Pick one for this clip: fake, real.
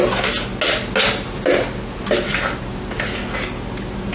real